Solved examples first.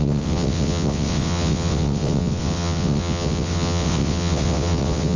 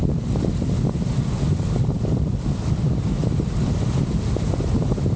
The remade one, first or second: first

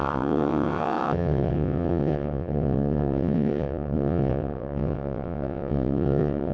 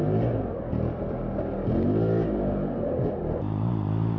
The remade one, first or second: first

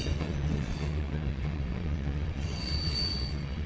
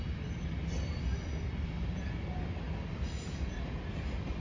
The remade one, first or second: first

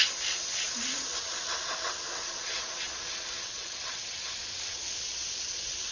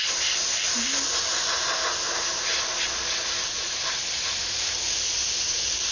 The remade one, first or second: first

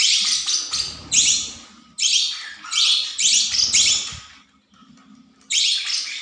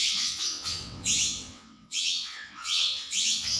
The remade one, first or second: second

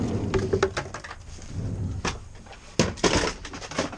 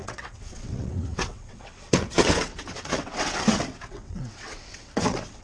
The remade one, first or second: second